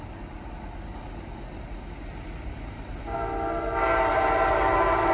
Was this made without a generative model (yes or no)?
yes